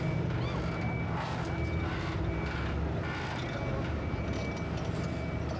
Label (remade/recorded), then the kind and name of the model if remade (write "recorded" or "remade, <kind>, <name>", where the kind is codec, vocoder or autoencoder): recorded